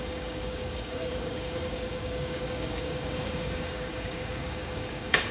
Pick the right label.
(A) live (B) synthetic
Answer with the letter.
B